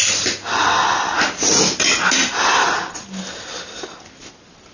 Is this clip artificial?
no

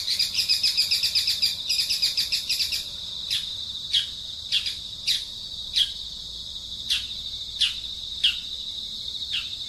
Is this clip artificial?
no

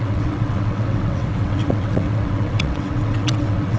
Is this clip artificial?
yes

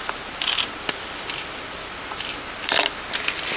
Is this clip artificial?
no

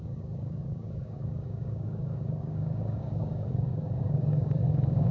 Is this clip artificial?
yes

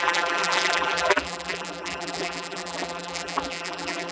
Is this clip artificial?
yes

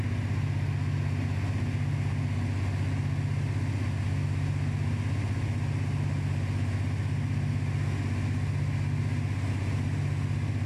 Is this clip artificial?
no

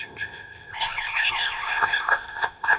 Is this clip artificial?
yes